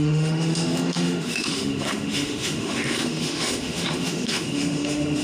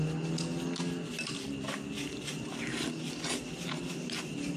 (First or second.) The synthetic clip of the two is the first